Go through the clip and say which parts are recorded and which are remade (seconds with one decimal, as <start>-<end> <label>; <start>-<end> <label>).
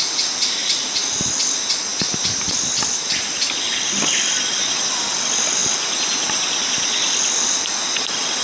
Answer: 0.0-0.6 recorded; 0.6-1.4 remade; 1.4-8.4 recorded